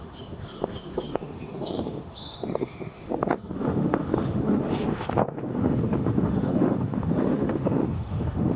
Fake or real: fake